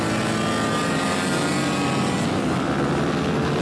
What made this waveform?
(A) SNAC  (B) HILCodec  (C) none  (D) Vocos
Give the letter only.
C